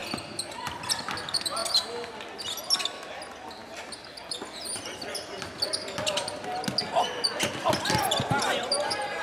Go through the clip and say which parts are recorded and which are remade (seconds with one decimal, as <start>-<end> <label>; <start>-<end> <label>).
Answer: 0.0-9.2 recorded